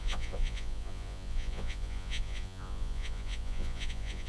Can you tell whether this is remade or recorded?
remade